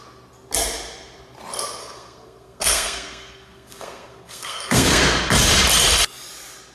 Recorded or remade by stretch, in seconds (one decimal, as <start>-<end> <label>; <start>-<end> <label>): 0.0-1.8 recorded; 1.8-5.0 remade; 5.0-6.7 recorded